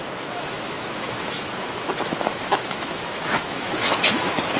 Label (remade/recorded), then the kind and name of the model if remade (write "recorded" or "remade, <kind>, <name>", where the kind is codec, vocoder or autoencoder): remade, autoencoder, DAC-VAE